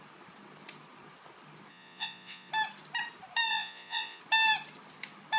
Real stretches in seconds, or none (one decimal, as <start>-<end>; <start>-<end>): 0.0-1.7; 2.5-3.5; 4.2-5.4